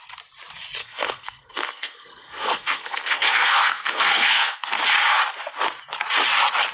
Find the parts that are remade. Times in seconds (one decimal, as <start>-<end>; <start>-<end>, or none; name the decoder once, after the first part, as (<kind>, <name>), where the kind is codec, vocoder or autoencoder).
0.8-4.8 (codec, SNAC)